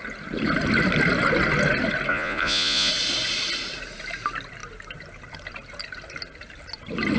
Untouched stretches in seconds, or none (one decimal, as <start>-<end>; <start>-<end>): 0.0-2.1; 2.9-7.2